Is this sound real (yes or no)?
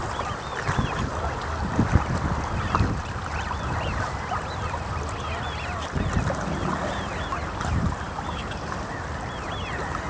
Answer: yes